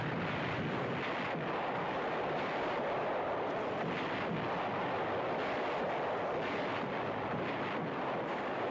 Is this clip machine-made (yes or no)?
no